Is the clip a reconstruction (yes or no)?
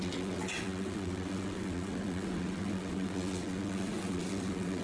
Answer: yes